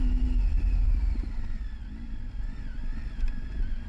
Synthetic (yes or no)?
no